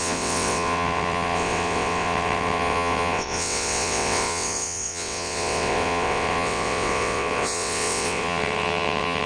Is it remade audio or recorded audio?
remade